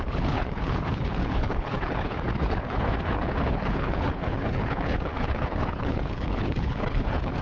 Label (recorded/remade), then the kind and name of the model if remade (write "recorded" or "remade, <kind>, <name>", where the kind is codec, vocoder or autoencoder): remade, codec, HILCodec